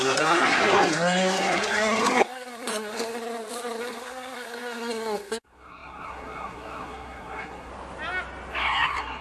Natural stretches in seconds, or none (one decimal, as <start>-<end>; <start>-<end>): 3.2-3.8; 7.7-8.5